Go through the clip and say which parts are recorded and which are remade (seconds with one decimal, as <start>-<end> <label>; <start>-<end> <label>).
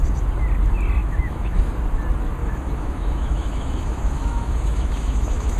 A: 0.0-1.0 recorded; 1.0-1.7 remade; 1.7-2.4 recorded; 2.4-5.6 remade